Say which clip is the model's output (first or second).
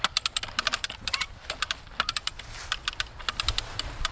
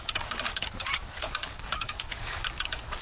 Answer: second